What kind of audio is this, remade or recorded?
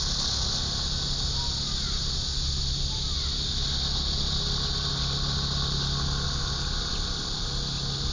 recorded